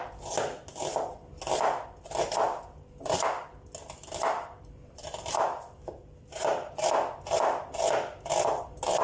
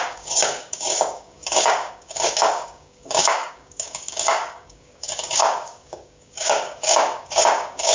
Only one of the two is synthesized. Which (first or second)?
second